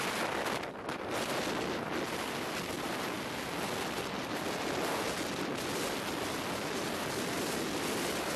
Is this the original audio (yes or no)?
yes